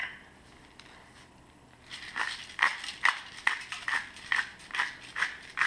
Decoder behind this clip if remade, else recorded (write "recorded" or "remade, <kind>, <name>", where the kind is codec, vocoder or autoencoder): recorded